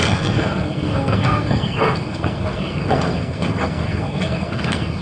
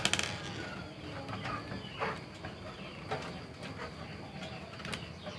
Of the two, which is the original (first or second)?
second